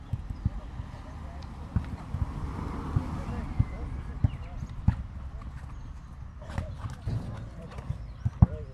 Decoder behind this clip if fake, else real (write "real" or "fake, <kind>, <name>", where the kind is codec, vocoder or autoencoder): fake, vocoder, BigVGAN v2